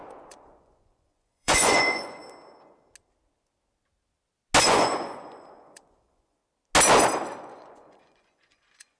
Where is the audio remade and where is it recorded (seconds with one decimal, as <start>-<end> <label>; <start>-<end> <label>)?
0.0-2.2 remade; 2.2-4.6 recorded; 4.6-6.4 remade; 6.4-7.4 recorded; 7.4-9.0 remade